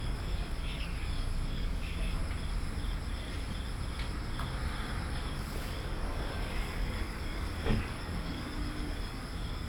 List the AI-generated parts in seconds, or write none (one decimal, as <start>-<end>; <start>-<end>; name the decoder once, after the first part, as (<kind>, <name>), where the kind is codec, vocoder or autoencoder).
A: 0.0-2.2 (codec, DAC); 5.1-9.7